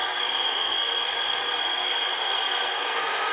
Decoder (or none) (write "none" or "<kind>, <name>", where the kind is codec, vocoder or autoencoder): codec, SNAC